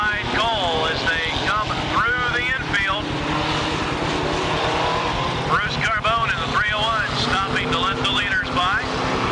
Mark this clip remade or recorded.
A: recorded